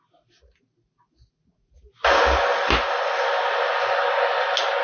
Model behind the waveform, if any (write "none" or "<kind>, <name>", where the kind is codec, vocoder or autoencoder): none